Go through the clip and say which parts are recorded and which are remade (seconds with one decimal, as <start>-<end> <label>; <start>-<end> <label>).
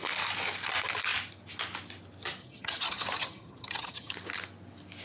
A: 0.0-2.4 recorded; 2.4-4.1 remade; 4.1-5.0 recorded